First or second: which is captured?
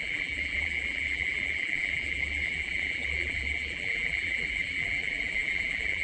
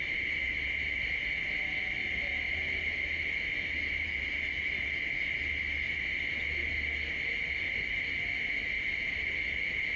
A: second